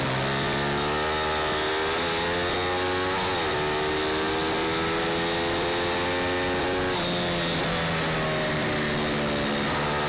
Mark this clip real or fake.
real